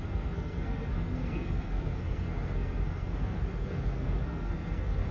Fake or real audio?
fake